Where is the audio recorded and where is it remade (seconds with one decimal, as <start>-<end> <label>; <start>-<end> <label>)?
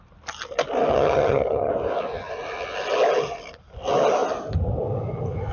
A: 0.0-0.9 recorded; 0.9-1.7 remade; 1.7-5.5 recorded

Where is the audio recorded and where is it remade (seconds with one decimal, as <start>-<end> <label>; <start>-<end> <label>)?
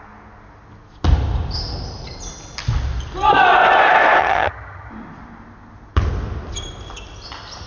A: 0.0-4.2 recorded; 4.2-4.9 remade; 4.9-7.7 recorded